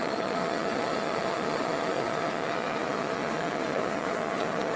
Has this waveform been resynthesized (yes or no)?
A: yes